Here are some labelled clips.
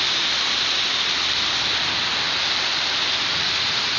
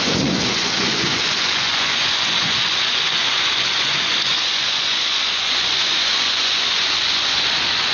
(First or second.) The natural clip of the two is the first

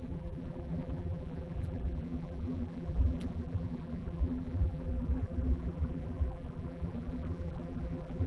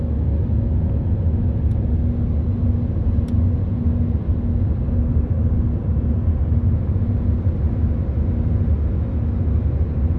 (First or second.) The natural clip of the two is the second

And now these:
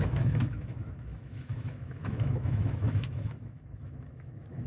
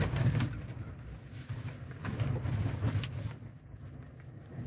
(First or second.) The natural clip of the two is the second